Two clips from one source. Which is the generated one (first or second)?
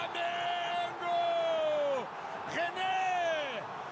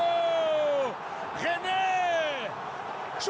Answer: first